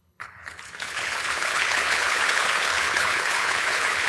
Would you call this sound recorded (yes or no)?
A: no